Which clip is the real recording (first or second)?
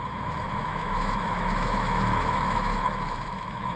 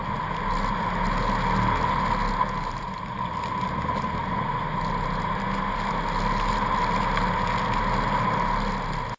second